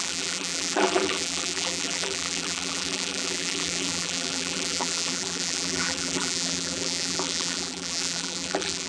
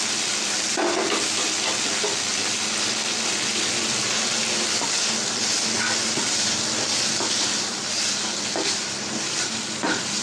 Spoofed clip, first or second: first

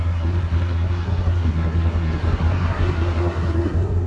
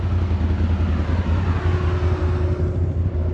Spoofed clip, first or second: first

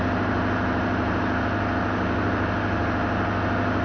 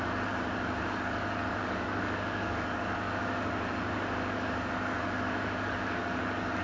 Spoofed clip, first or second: second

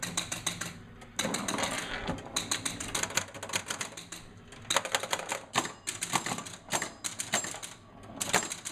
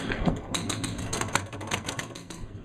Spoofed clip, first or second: second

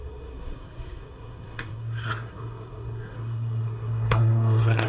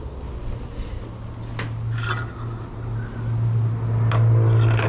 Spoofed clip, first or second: first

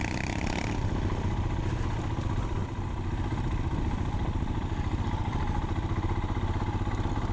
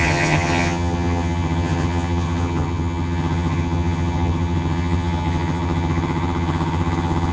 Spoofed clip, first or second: second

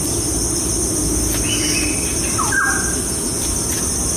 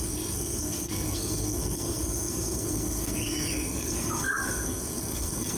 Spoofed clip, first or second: second